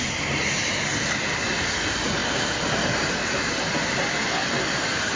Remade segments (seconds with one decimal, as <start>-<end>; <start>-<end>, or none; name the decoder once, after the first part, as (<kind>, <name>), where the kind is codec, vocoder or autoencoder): 0.0-5.2 (vocoder, BigVGAN v2)